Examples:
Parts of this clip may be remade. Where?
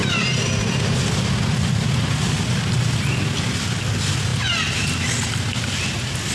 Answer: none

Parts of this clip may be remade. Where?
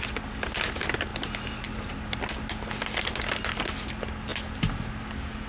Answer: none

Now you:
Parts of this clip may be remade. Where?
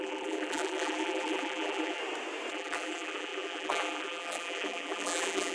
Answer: 0.0-2.0 (vocoder, BigVGAN v2); 2.5-5.5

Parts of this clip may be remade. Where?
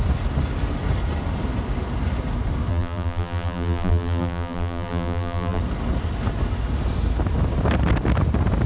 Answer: 2.7-5.6 (vocoder, BigVGAN v2)